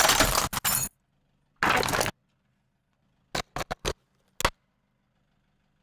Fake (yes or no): no